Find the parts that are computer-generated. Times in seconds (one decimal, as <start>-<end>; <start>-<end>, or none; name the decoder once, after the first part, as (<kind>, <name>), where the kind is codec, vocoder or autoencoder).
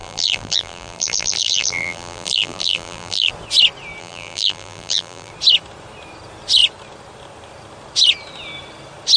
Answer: 0.0-3.3 (vocoder, BigVGAN v2); 4.0-5.3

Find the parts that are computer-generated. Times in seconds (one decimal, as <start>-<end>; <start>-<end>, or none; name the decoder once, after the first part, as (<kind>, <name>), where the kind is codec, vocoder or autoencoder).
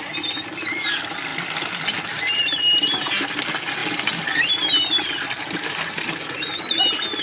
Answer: 0.0-3.8 (vocoder, BigVGAN v2); 4.5-7.2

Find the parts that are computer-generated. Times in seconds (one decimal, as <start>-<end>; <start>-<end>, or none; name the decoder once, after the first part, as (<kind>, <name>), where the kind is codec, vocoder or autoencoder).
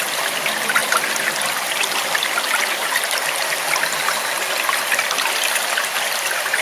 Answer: none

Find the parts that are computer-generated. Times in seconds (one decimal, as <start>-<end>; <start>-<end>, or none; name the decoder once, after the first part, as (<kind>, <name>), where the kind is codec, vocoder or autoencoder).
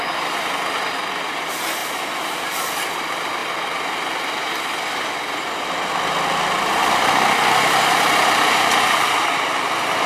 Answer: none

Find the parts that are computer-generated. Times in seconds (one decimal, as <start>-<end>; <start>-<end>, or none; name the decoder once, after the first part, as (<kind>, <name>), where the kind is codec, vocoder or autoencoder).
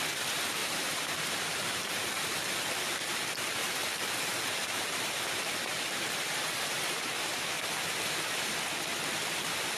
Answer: 0.6-2.2 (vocoder, BigVGAN v2); 3.6-7.5